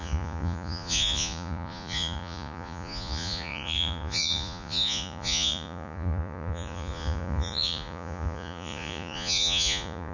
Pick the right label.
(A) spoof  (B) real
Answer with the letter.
A